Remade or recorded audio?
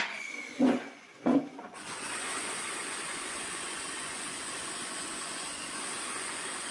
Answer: remade